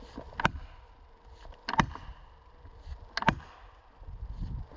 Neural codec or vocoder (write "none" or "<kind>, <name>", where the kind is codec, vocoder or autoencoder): none